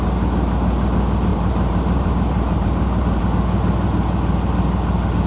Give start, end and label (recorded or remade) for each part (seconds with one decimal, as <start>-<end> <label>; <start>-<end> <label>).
0.0-1.3 recorded; 1.3-3.2 remade; 3.2-5.3 recorded